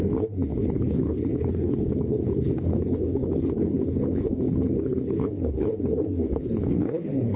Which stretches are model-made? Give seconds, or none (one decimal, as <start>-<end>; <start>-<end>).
0.0-7.4